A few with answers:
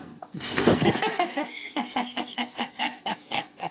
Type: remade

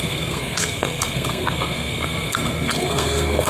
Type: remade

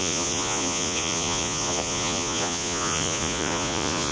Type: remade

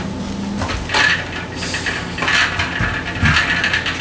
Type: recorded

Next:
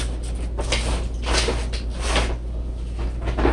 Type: recorded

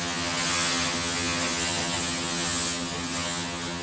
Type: remade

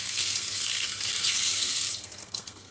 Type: remade